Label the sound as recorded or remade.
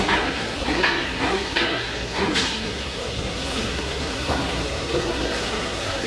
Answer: remade